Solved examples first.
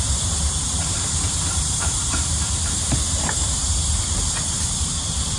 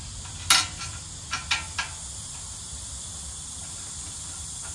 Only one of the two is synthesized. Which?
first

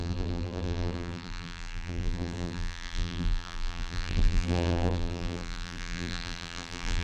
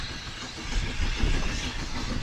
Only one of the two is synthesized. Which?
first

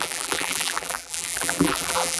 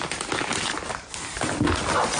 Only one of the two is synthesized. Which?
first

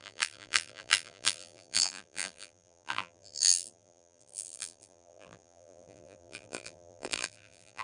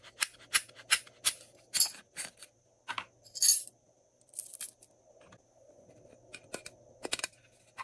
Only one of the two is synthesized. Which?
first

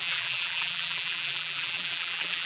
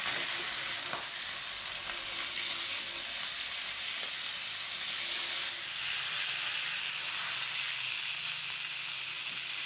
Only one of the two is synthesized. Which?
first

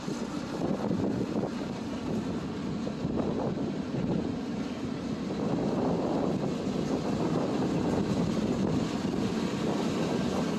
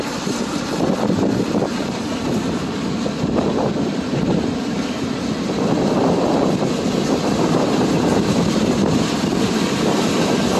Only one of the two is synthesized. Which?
second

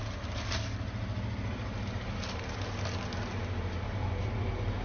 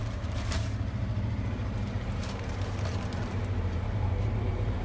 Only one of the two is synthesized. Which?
second